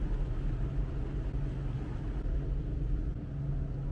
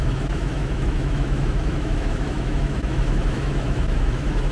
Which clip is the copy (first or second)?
second